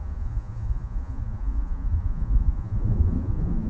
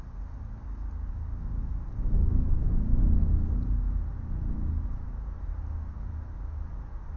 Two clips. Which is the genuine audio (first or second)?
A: second